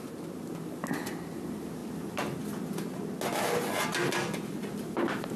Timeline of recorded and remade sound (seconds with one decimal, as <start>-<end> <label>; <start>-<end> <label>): 0.0-5.4 recorded